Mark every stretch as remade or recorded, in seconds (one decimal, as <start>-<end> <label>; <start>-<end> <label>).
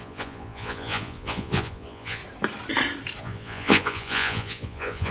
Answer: 0.0-2.2 remade; 2.2-3.2 recorded; 3.2-5.1 remade